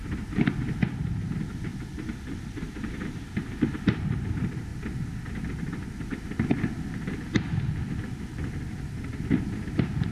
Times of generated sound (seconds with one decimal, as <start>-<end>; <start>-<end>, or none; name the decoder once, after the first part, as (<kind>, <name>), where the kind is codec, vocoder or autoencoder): 0.0-1.7 (vocoder, BigVGAN v2); 2.4-4.7; 9.4-10.1